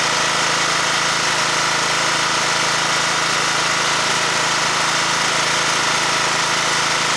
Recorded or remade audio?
recorded